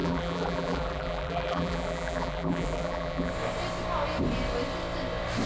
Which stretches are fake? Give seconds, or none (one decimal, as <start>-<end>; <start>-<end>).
0.0-3.3